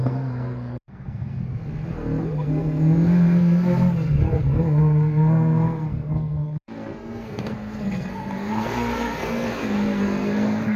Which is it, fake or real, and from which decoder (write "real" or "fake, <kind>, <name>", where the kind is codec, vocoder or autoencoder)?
fake, codec, SNAC